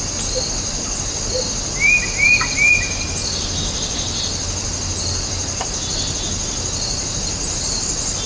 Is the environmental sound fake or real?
real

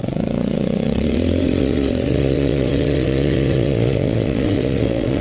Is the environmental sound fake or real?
fake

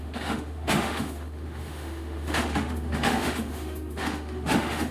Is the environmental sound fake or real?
fake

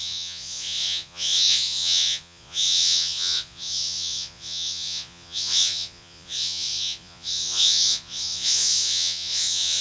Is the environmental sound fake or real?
fake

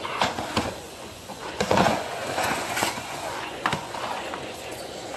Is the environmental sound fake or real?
fake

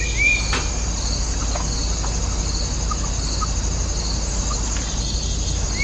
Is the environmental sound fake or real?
real